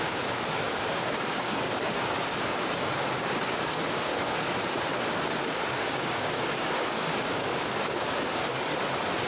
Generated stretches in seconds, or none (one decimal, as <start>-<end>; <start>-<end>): 0.0-4.1; 5.5-8.7